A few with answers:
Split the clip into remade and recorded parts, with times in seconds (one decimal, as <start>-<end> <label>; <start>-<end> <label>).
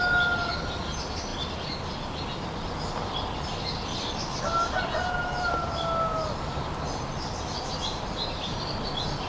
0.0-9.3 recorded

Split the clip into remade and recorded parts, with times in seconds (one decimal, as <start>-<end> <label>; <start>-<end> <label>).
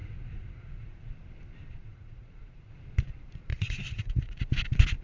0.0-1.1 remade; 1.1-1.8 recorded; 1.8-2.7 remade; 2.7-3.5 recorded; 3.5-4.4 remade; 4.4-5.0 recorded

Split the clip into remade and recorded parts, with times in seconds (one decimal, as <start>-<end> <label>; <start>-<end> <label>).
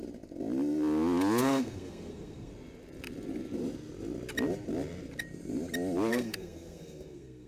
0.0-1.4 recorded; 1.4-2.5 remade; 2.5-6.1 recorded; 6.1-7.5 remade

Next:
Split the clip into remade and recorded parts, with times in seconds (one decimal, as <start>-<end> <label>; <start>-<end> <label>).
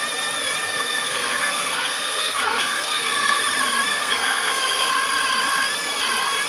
0.0-0.7 recorded; 0.7-3.4 remade; 3.4-3.9 recorded; 3.9-4.9 remade; 4.9-6.5 recorded